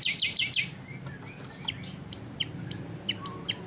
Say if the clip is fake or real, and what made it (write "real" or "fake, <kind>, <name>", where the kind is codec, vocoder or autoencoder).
real